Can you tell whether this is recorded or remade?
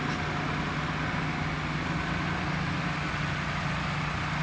recorded